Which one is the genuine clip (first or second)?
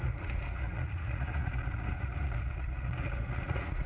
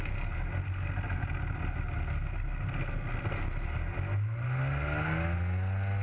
second